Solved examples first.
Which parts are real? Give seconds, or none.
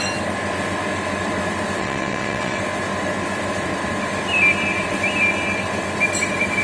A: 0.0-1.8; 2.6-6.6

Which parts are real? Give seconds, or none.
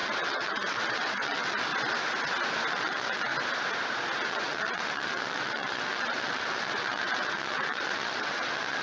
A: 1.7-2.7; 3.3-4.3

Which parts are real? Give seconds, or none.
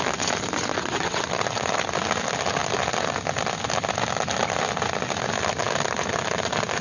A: 0.0-0.7; 1.3-6.8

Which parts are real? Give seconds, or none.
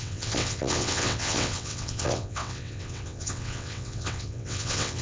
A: none